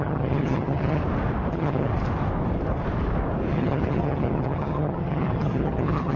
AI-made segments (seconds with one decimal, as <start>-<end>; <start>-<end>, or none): 0.0-1.0; 1.5-1.9; 3.5-6.2